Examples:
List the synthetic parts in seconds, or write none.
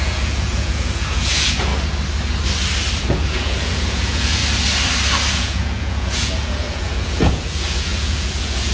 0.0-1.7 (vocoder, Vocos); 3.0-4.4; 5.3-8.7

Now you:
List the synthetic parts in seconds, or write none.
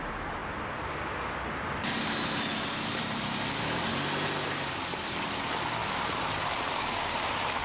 none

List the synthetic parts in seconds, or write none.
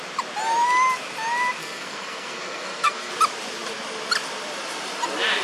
1.6-3.1 (codec, SNAC)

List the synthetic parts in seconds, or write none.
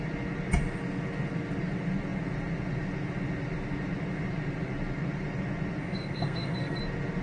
5.8-6.8 (codec, SNAC)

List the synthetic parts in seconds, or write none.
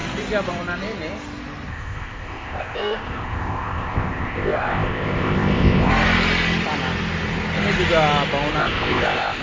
1.7-5.9 (codec, ZipCodec); 8.6-9.4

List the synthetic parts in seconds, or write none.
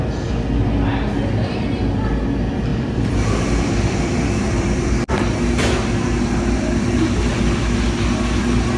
2.7-5.2 (vocoder, BigVGAN v2)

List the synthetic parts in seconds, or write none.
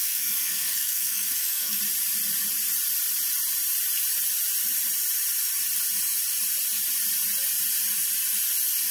0.0-1.8 (codec, SNAC)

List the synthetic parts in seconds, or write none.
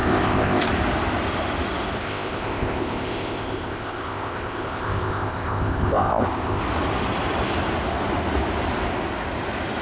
0.0-0.7 (codec, ZipCodec); 2.0-6.6